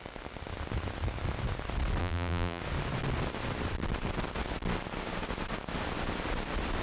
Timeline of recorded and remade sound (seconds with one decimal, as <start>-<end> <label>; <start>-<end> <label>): 0.0-2.0 recorded; 2.0-2.6 remade; 2.6-6.8 recorded